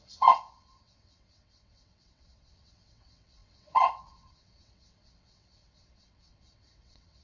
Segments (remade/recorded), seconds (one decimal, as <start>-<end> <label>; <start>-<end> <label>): 0.0-7.2 remade